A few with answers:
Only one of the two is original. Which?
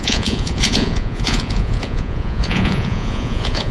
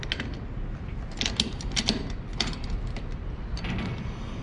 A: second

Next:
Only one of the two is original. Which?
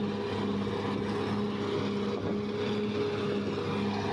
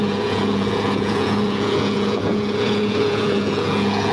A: first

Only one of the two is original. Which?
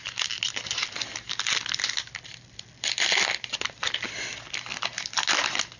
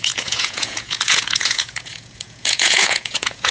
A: first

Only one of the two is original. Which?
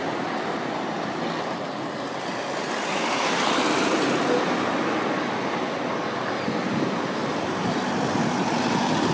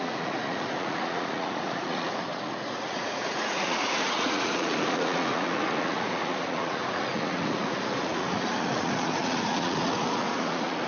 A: first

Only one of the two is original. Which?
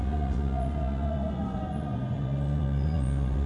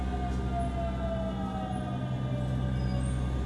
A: second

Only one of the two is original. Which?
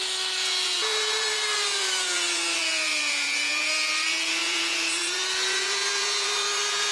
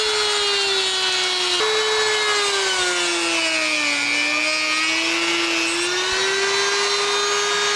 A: second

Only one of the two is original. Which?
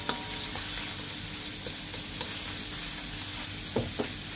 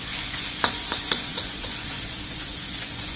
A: first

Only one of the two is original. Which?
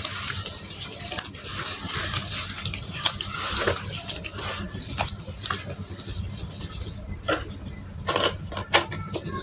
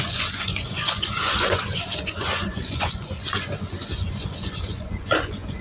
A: first